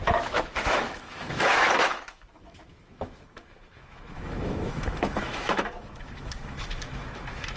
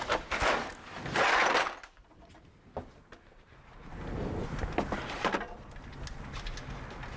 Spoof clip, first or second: first